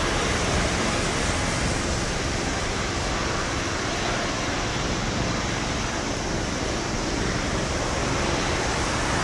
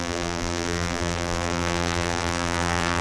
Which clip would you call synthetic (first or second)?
second